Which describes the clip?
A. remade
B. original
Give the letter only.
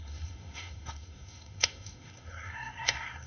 A